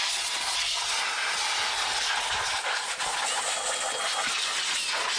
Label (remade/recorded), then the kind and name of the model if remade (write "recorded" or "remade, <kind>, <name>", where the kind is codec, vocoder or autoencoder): recorded